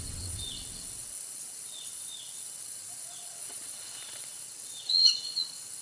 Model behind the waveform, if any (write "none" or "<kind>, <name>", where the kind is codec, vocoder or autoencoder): vocoder, WaveNeXt